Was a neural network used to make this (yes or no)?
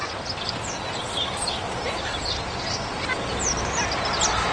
no